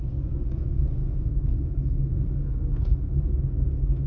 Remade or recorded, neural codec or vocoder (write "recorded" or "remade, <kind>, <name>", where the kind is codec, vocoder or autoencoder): remade, codec, SNAC